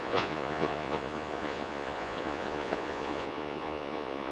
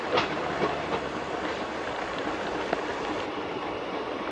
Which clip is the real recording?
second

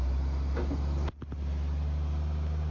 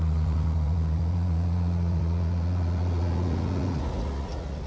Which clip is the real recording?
first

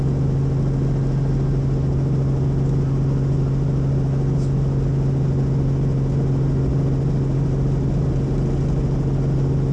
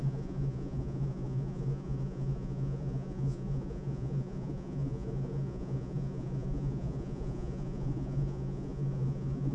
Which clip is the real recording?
first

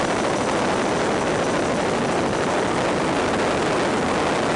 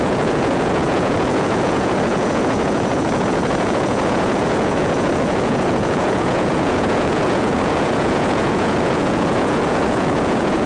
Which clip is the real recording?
first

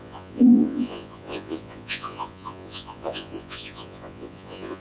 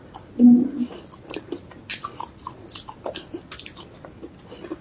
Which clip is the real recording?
second